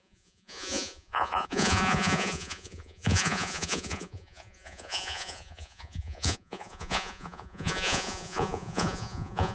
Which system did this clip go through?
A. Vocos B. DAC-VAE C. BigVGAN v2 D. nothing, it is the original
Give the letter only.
A